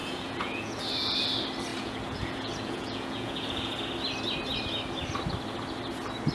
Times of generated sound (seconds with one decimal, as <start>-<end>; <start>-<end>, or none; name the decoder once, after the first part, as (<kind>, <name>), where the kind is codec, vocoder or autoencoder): 0.0-0.8 (vocoder, Vocos); 1.7-3.8